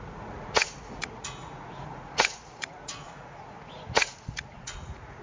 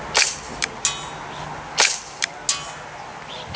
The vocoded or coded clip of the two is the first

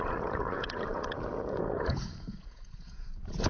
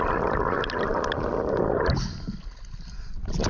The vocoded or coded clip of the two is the first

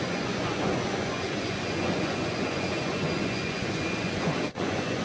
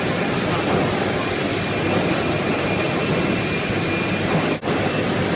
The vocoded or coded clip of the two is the first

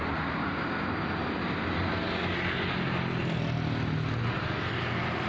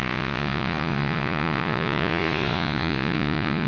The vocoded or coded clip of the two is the second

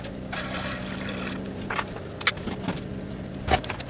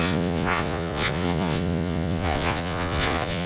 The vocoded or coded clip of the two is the second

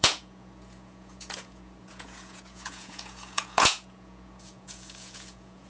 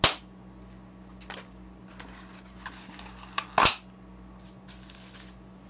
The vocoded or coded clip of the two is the first